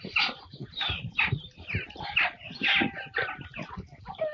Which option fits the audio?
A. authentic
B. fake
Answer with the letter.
A